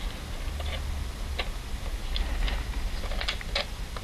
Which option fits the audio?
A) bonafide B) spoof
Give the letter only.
A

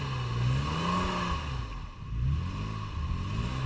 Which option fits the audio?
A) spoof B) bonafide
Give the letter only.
B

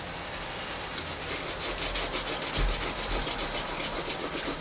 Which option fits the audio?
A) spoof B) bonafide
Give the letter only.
B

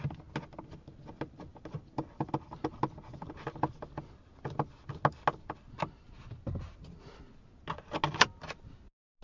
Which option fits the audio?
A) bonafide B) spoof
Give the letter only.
A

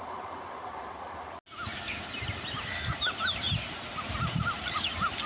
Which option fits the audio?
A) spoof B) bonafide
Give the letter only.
B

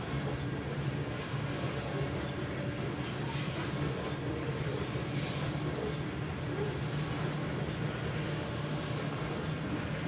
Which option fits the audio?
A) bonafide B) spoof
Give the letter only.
A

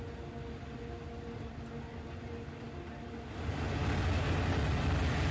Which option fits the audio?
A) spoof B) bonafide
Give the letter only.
B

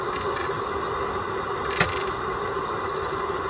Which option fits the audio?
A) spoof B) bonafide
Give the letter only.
B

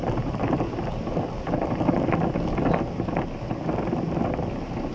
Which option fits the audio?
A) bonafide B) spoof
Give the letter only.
A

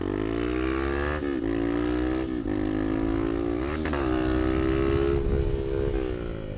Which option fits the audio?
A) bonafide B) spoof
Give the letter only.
A